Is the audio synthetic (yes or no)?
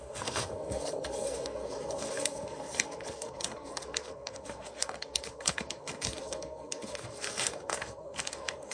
yes